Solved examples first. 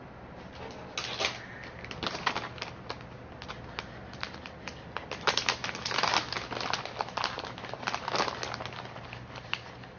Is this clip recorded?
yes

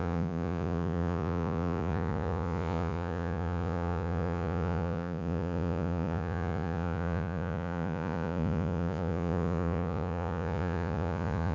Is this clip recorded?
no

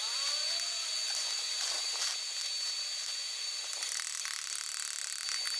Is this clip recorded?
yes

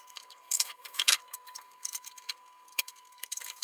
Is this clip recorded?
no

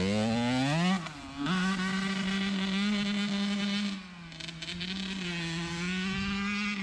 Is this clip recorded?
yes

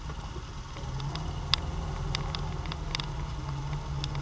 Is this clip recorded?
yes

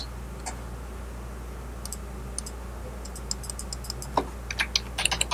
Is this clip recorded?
yes